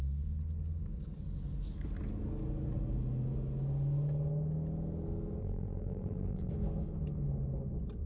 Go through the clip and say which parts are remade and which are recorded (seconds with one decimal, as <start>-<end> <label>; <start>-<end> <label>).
0.0-5.4 recorded; 5.4-6.5 remade; 6.5-8.1 recorded